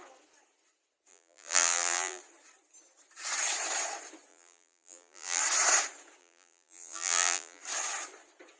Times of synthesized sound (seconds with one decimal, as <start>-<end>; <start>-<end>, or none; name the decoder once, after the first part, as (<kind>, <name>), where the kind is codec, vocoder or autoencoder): 1.1-2.2 (vocoder, BigVGAN v2); 4.3-5.4; 6.2-7.6